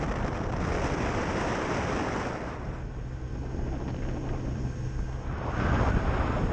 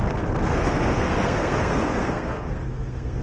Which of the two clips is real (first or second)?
first